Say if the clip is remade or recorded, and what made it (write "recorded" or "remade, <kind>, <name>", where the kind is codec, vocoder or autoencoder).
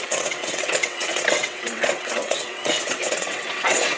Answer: remade, vocoder, WaveNeXt